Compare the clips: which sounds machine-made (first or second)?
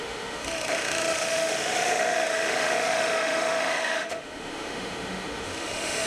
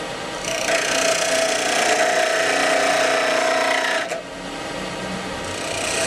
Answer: first